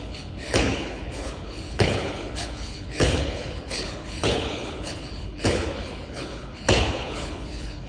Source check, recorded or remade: remade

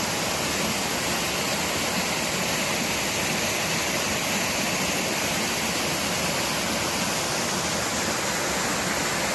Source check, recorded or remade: recorded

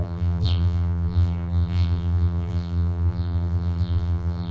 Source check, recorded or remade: remade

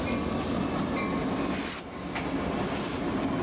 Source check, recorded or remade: recorded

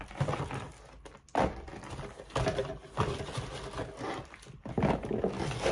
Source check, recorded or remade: recorded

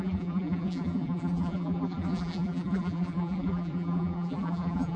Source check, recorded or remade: remade